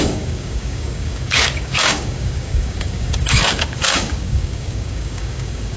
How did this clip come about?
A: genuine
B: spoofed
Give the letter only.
B